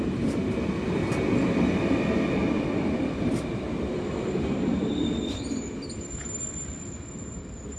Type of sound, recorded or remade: recorded